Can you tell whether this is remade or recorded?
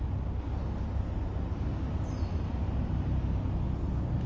recorded